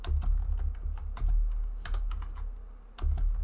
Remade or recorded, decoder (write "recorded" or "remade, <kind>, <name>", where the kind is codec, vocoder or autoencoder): recorded